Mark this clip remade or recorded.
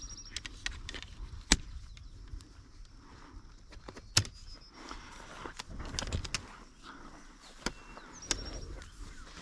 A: recorded